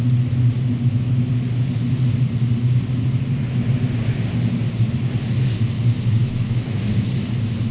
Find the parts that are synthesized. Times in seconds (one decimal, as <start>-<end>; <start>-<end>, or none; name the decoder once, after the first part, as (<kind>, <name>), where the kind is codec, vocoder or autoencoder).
6.2-6.8 (autoencoder, DAC-VAE)

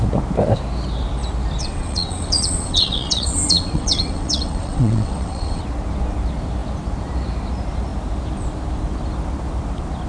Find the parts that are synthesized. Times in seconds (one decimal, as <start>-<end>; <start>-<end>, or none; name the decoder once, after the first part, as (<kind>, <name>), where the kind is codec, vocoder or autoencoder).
1.6-5.6 (vocoder, WaveNeXt)

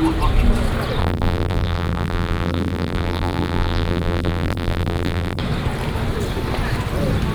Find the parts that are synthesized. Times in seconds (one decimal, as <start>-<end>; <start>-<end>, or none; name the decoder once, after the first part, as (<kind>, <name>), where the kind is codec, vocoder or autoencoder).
1.0-5.4 (vocoder, BigVGAN v2)

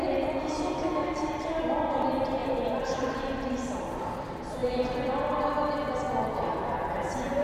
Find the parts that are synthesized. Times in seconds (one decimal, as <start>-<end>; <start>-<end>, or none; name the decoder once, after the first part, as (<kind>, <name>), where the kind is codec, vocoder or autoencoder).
1.0-1.6 (vocoder, BigVGAN v2); 2.4-3.1